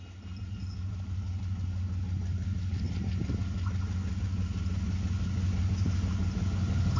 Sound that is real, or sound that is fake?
real